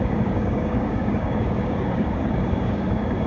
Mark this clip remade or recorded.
remade